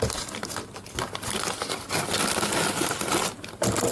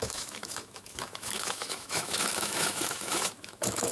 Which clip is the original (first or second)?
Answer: first